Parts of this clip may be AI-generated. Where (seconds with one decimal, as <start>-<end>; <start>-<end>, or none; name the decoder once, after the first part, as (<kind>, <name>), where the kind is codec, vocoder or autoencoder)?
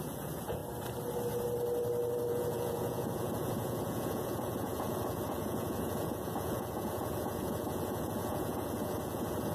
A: 0.0-0.6 (vocoder, Vocos); 2.3-9.5